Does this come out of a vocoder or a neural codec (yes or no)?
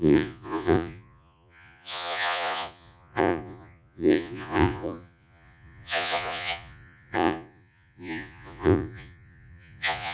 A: yes